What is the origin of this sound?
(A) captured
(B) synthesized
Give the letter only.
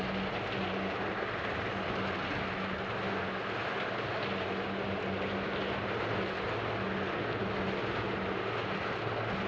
A